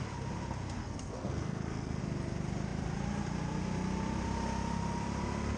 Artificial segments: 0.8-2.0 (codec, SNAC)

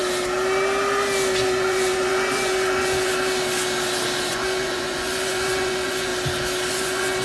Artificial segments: 1.4-3.1 (vocoder, Vocos); 4.3-6.1; 6.7-7.2

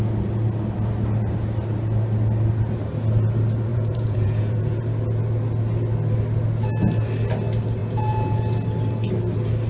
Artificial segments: 3.7-4.8 (vocoder, Vocos); 7.8-8.4

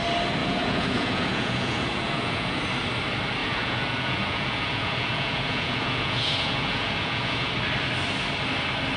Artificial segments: 0.4-2.6 (vocoder, Vocos); 3.4-7.5

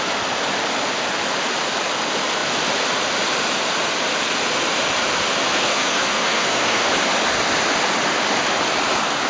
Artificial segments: 5.4-6.9 (codec, SNAC)

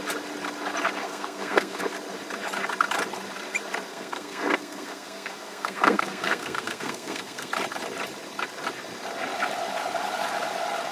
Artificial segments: 1.0-1.8 (codec, SNAC); 3.9-7.5

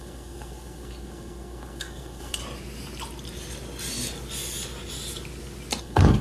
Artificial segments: 0.0-2.4 (codec, SNAC); 5.8-6.2